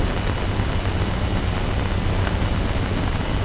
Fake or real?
real